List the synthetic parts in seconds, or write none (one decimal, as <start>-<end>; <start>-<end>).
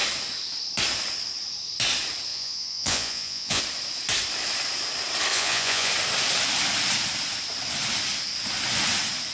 2.3-3.6; 5.3-5.9